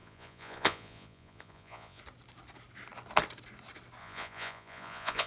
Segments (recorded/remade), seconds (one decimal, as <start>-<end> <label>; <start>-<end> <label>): 0.0-2.0 remade; 2.0-4.0 recorded; 4.0-5.3 remade